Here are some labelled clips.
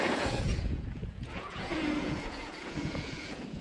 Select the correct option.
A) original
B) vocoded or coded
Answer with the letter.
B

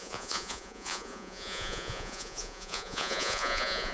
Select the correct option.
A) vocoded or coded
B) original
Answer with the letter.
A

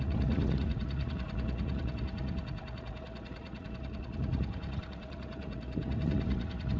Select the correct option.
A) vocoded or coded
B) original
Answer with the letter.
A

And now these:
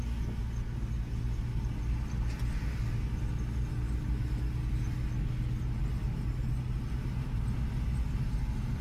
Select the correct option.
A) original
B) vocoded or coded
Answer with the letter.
A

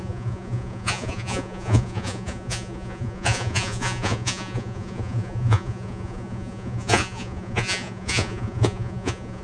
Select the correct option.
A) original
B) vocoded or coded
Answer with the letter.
B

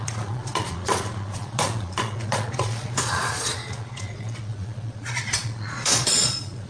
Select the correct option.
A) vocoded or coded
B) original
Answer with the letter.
A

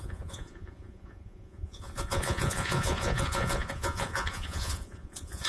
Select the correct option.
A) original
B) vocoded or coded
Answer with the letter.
B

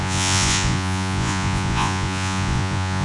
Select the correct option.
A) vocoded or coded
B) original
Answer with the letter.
A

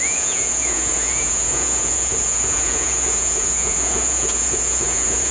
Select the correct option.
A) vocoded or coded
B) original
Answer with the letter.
A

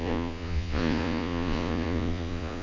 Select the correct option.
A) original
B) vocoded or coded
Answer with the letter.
B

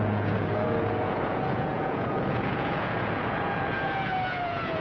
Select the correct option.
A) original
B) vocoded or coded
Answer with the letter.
B